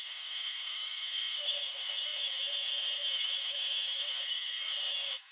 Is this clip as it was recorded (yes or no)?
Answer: no